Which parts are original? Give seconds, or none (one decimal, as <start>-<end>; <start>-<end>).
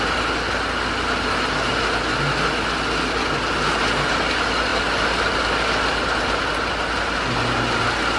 0.0-8.2